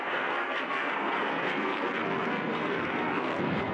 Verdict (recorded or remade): remade